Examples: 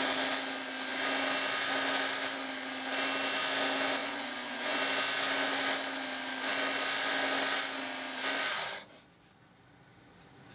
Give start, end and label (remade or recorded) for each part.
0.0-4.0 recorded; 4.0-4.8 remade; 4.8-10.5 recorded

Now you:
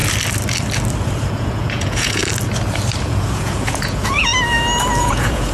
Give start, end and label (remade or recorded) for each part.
0.0-1.3 recorded; 1.3-2.2 remade; 2.2-3.0 recorded; 3.0-4.3 remade; 4.3-5.0 recorded; 5.0-5.5 remade

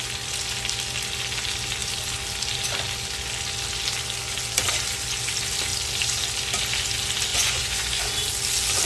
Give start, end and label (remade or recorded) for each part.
0.0-7.3 recorded; 7.3-8.0 remade; 8.0-8.9 recorded

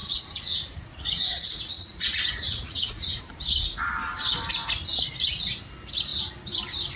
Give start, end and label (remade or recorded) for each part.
0.0-3.2 remade; 3.2-7.0 recorded

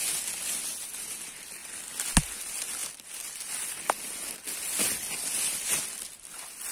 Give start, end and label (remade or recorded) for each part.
0.0-6.7 recorded

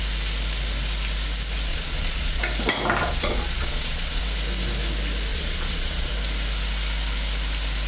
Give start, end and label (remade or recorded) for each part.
0.0-1.7 recorded; 1.7-2.4 remade; 2.4-3.0 recorded; 3.0-4.2 remade; 4.2-5.3 recorded; 5.3-6.1 remade; 6.1-7.9 recorded